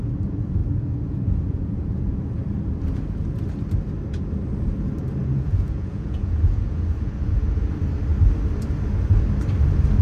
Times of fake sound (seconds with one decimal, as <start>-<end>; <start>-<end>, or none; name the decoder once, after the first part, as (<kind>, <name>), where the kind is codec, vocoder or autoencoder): 0.6-2.2 (vocoder, Vocos); 5.2-7.7